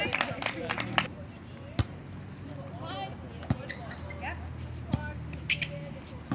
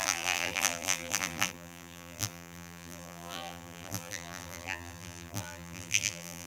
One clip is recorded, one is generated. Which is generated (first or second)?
second